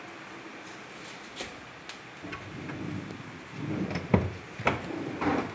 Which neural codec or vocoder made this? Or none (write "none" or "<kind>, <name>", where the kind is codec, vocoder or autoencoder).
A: none